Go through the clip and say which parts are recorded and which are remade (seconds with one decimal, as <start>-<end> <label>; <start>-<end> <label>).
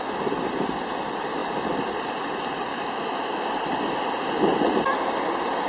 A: 0.0-2.7 recorded; 2.7-3.5 remade; 3.5-5.7 recorded